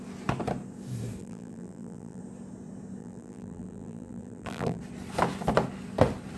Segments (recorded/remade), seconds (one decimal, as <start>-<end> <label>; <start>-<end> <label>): 0.0-1.2 recorded; 1.2-2.2 remade; 2.2-3.0 recorded; 3.0-4.8 remade; 4.8-6.4 recorded